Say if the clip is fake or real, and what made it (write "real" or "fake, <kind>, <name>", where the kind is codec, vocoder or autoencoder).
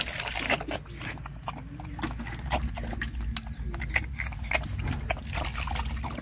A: real